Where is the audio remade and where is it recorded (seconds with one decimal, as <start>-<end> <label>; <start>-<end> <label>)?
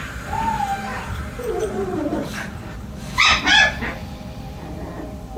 0.0-5.4 remade